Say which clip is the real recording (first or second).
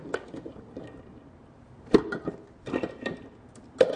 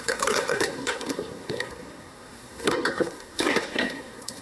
first